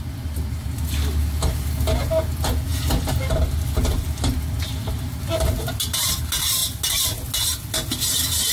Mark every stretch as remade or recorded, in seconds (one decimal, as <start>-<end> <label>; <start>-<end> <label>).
0.0-8.5 recorded